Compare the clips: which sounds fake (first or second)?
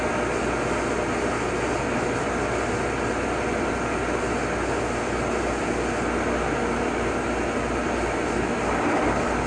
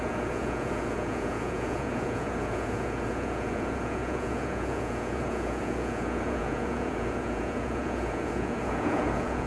second